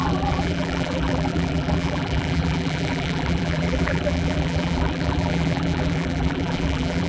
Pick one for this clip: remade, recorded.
remade